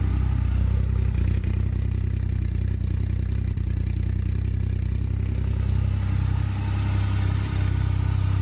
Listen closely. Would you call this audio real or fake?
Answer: real